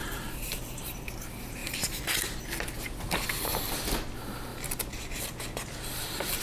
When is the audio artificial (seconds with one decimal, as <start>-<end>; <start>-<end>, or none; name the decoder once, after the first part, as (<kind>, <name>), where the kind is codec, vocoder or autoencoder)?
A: 0.0-0.8 (vocoder, BigVGAN v2); 1.6-2.4; 4.5-6.4